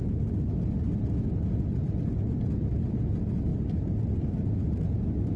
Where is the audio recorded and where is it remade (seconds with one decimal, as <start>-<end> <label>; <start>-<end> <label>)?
0.0-5.4 recorded

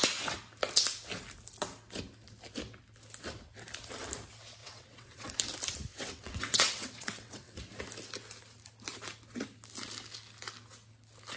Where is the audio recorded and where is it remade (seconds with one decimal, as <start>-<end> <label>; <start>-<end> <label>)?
0.0-4.6 recorded; 4.6-5.3 remade; 5.3-5.9 recorded; 5.9-7.6 remade; 7.6-11.4 recorded

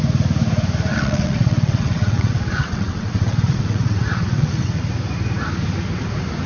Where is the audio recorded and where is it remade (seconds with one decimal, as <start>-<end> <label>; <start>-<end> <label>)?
0.0-0.9 recorded; 0.9-4.8 remade; 4.8-6.5 recorded

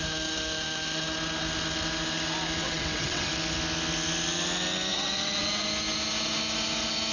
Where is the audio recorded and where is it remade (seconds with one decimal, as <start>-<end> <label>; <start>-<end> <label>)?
0.0-2.6 recorded; 2.6-3.3 remade; 3.3-4.9 recorded; 4.9-5.5 remade; 5.5-7.1 recorded

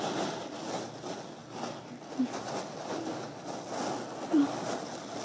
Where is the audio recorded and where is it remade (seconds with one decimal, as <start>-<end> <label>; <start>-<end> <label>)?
0.0-5.2 recorded